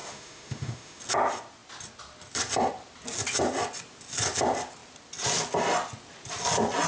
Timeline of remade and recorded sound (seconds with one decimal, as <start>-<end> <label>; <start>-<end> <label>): 0.0-1.0 remade; 1.0-6.9 recorded